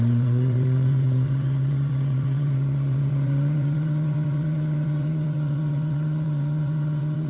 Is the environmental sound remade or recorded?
remade